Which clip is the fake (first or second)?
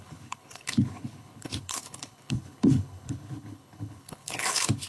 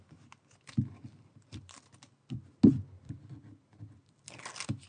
first